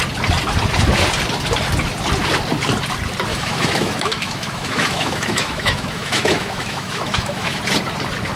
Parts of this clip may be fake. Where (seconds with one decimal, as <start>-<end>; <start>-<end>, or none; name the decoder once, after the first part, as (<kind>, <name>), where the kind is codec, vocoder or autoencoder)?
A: 3.3-7.6 (autoencoder, DAC-VAE)